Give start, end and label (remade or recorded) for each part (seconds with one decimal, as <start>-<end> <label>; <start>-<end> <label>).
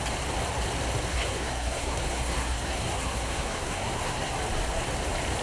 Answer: 0.0-1.1 recorded; 1.1-4.3 remade; 4.3-5.4 recorded